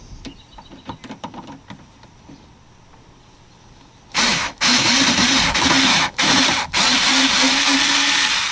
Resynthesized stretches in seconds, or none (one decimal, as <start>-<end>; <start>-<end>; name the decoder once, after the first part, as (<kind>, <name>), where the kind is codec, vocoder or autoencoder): 4.3-4.9 (autoencoder, DAC-VAE); 5.9-6.4